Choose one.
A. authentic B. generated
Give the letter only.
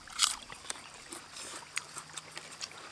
B